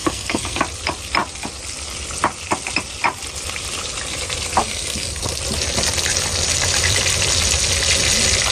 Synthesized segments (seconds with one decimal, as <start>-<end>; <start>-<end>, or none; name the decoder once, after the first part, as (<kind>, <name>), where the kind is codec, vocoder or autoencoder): 0.0-0.6 (codec, SNAC); 4.6-5.4